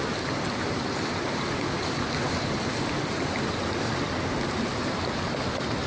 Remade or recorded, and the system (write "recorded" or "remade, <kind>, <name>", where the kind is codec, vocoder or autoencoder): recorded